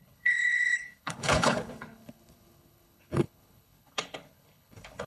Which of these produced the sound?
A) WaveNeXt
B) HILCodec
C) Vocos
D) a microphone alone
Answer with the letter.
B